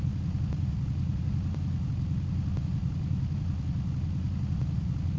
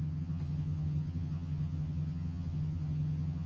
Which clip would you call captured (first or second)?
first